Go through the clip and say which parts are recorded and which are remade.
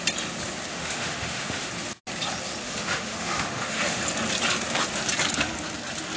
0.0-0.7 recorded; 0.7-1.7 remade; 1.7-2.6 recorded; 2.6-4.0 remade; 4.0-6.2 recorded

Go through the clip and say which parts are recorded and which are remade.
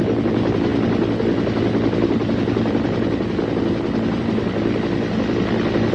0.0-5.9 recorded